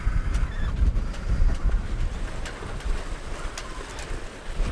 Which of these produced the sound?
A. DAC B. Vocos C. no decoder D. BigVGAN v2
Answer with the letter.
D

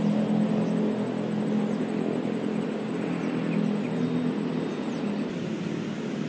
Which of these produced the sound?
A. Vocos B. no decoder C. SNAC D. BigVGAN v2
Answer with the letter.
B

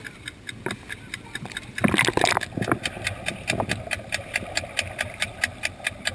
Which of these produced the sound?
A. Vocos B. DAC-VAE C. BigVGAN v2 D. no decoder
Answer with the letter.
D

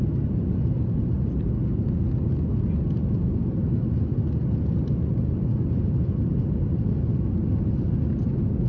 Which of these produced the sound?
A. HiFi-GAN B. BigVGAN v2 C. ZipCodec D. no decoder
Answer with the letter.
D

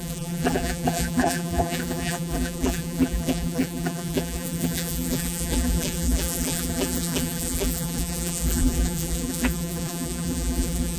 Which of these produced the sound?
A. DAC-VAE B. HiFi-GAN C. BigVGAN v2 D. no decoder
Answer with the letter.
C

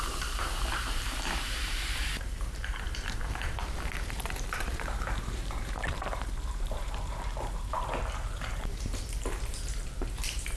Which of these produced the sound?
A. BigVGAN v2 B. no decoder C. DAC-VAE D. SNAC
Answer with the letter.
A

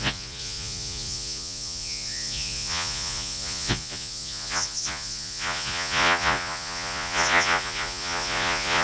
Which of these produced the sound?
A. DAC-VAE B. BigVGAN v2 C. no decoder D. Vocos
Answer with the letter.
D